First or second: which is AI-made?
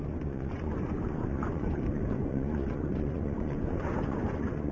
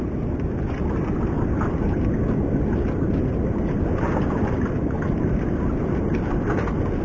first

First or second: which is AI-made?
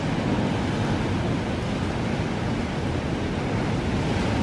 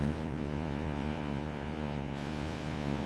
second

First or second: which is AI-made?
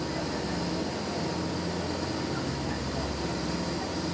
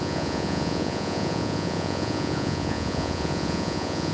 second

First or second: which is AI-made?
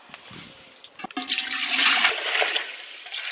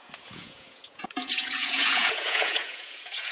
second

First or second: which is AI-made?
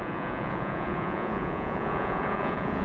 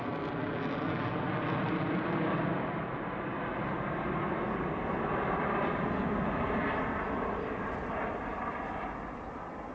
first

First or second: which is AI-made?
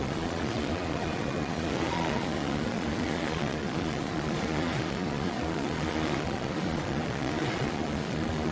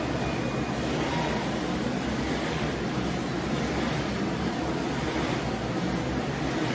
first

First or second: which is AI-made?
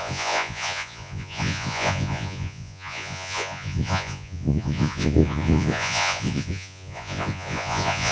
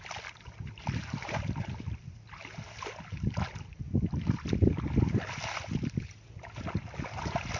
first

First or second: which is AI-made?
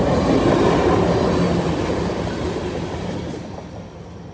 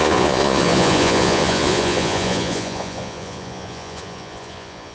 second